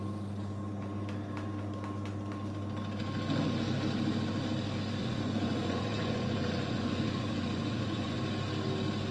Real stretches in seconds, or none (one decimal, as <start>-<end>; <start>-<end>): 0.0-5.0; 8.2-9.1